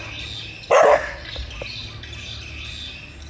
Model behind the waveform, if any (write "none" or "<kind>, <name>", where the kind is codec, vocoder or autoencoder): none